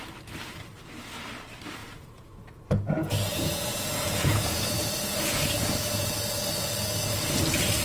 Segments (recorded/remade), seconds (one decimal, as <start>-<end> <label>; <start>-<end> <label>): 0.0-1.8 recorded; 1.8-6.1 remade; 6.1-7.8 recorded